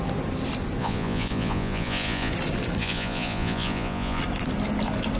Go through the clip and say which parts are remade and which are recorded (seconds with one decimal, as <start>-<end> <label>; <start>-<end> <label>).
0.0-0.8 recorded; 0.8-2.3 remade; 2.3-2.8 recorded; 2.8-4.2 remade; 4.2-5.2 recorded